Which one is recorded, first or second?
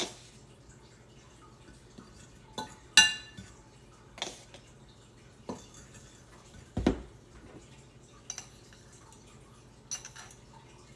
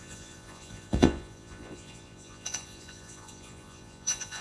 first